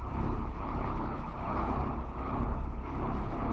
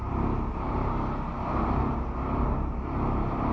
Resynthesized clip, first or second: first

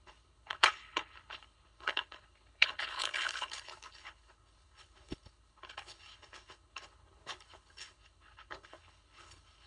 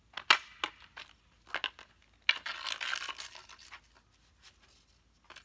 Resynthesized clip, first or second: first